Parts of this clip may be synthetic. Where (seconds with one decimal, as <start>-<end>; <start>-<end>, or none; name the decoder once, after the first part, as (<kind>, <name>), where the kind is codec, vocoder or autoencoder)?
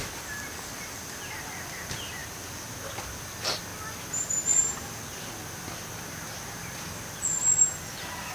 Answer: none